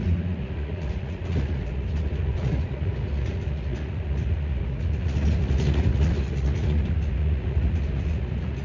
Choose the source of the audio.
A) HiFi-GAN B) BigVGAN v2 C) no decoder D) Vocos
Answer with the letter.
D